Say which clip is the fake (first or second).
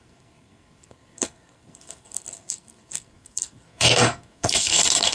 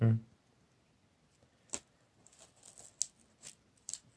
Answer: first